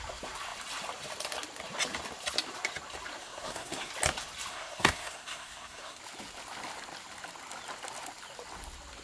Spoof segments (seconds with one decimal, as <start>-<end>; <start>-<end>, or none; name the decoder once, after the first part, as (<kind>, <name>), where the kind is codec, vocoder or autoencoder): 3.2-3.9 (codec, SNAC); 4.5-6.0